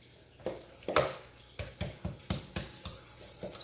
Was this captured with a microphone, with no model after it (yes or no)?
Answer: yes